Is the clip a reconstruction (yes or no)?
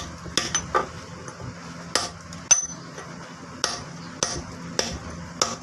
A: no